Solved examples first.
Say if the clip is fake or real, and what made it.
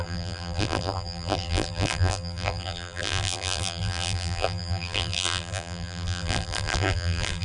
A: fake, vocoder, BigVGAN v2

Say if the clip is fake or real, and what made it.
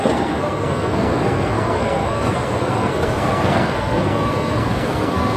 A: fake, codec, SNAC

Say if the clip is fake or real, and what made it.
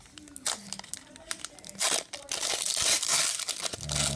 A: real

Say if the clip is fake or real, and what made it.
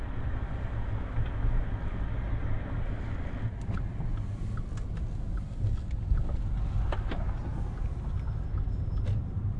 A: real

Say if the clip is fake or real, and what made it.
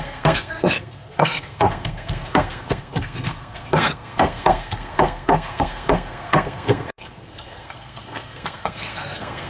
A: fake, codec, SNAC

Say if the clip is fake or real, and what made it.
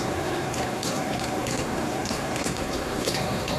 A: fake, codec, SNAC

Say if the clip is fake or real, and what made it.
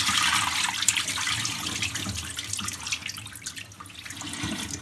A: real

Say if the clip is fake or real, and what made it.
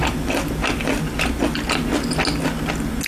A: real